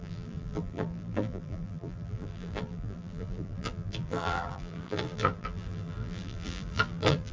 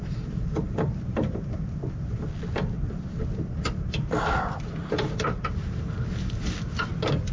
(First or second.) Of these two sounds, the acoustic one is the second